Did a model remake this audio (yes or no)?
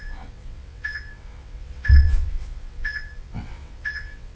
yes